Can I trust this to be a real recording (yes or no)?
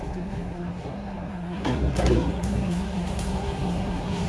no